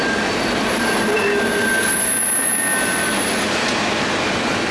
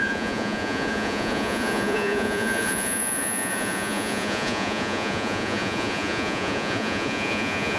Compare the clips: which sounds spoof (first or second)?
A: second